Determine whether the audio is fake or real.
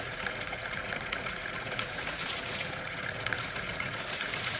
fake